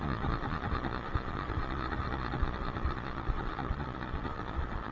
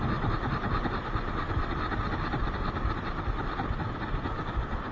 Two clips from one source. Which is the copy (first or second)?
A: first